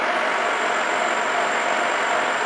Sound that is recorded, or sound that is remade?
recorded